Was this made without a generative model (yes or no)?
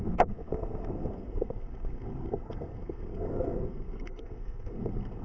no